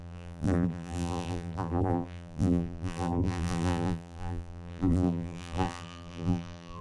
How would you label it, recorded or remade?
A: remade